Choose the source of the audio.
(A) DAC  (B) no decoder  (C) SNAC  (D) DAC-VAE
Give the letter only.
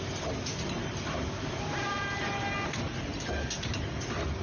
B